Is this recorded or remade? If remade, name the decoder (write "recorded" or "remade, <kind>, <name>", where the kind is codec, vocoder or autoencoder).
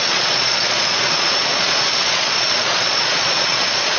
remade, vocoder, Vocos